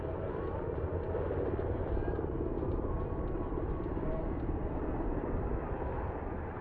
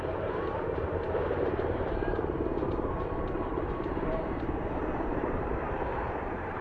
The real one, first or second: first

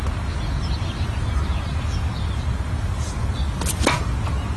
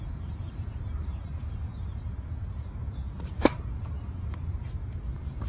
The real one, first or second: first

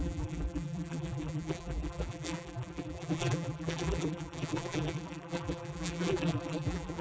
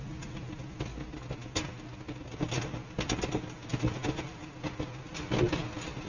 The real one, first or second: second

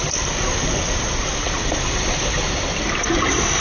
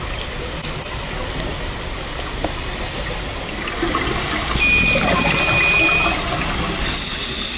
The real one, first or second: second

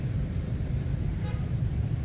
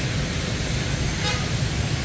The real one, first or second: second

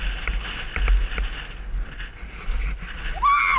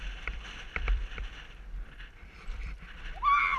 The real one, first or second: first